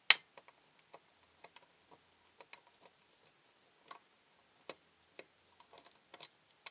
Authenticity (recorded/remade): recorded